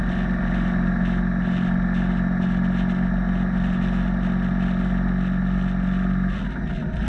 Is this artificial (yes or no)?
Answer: no